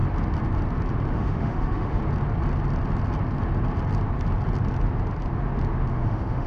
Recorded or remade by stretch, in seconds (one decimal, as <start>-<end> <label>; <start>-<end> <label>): 0.0-1.1 recorded; 1.1-2.0 remade; 2.0-5.9 recorded; 5.9-6.5 remade